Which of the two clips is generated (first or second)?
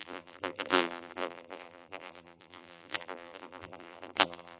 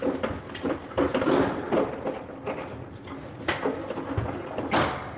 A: first